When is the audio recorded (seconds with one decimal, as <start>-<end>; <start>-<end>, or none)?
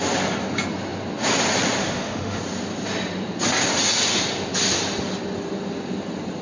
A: 0.0-1.8; 2.4-6.4